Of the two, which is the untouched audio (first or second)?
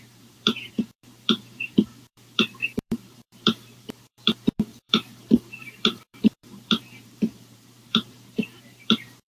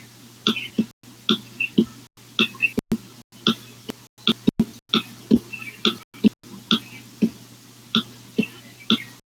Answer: second